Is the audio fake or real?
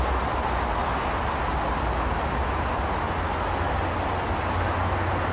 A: real